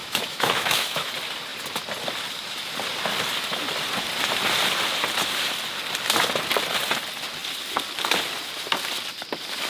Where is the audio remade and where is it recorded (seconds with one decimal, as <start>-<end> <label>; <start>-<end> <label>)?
0.0-1.1 remade; 1.1-9.7 recorded